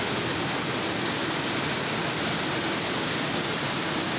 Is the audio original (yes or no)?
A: yes